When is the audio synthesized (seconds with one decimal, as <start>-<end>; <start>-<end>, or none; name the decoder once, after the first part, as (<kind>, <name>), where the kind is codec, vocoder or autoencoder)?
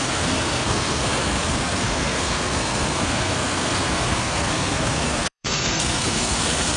0.0-6.8 (codec, SNAC)